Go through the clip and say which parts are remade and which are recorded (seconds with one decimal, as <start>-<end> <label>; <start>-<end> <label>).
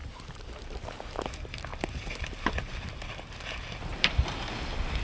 0.0-0.9 remade; 0.9-1.7 recorded; 1.7-2.3 remade; 2.3-3.9 recorded; 3.9-4.4 remade; 4.4-5.0 recorded